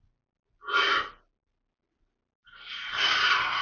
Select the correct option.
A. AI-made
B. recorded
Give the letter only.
B